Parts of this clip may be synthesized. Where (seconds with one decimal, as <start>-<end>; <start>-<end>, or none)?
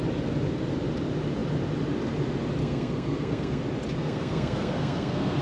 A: 2.6-3.6; 4.0-5.4